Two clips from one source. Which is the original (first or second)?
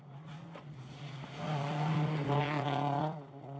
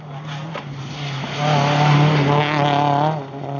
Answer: second